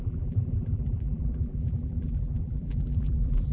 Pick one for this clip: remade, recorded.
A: remade